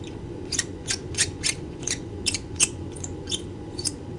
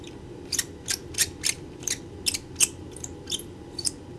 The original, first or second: second